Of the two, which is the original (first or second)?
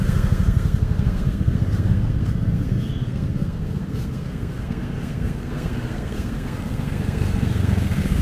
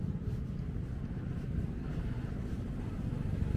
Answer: second